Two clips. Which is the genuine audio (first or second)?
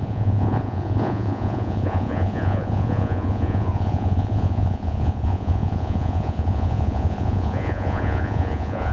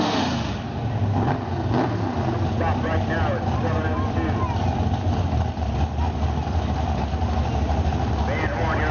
second